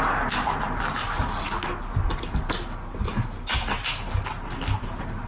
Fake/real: real